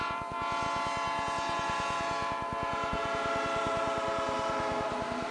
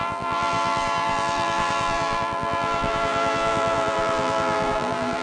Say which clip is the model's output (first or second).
second